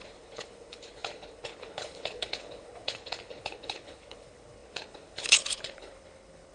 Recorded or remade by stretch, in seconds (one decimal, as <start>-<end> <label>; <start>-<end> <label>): 0.0-6.5 remade